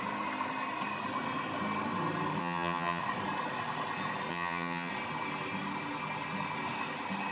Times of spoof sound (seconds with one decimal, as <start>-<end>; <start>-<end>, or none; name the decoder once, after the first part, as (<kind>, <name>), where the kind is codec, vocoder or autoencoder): 2.4-3.0 (vocoder, HiFi-GAN); 4.3-4.9